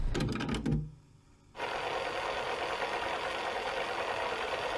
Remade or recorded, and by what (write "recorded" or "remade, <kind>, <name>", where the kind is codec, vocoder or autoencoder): recorded